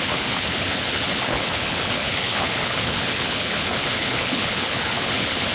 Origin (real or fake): fake